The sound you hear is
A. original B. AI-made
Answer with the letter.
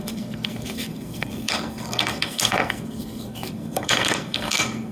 B